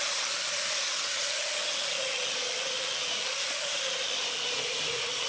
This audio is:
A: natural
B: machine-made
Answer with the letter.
A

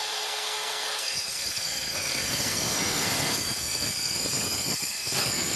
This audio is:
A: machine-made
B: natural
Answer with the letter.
A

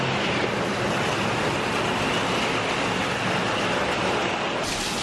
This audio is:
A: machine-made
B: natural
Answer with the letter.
B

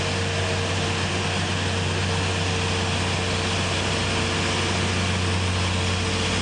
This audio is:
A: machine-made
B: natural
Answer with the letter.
B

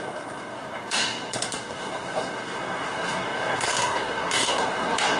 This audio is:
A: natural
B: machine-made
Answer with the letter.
B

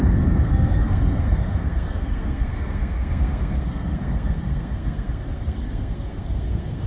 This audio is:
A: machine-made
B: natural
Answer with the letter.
A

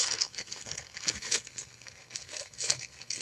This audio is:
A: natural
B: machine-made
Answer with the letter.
B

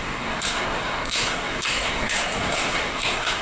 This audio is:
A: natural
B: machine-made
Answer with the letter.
B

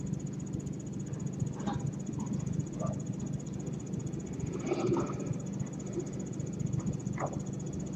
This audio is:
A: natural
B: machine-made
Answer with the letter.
A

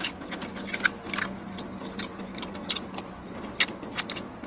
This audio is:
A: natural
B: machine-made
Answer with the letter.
A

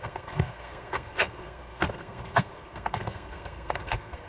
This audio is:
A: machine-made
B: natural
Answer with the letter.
A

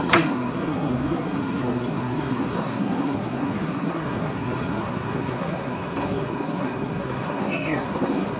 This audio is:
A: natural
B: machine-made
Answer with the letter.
B